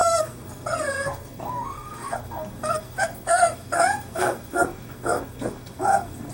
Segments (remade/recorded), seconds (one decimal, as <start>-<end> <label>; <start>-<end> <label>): 0.0-6.3 remade